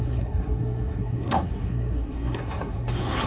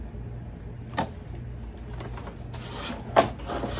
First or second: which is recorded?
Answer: second